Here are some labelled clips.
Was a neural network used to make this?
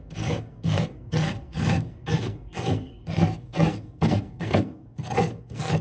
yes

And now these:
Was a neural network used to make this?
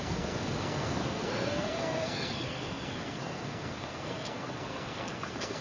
yes